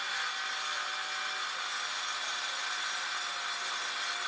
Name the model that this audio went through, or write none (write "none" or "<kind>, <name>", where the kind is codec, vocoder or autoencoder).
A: none